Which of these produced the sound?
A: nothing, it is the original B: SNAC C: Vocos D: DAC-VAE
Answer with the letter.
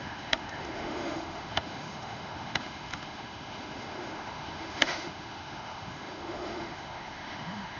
D